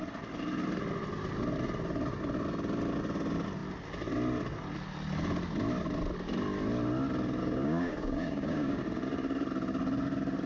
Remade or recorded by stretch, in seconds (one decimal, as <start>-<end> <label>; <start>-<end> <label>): 0.0-7.4 recorded; 7.4-8.8 remade; 8.8-10.5 recorded